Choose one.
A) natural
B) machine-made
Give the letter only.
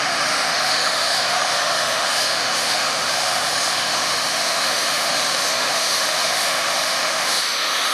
B